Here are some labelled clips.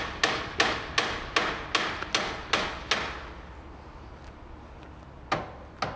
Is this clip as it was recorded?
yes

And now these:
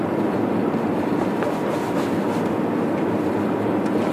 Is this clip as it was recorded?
yes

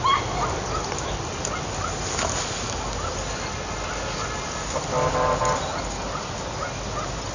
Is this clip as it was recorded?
yes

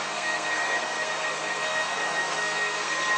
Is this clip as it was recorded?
no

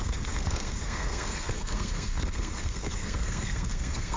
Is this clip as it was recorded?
no